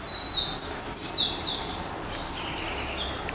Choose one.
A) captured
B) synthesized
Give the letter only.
A